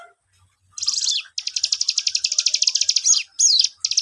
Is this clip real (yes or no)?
yes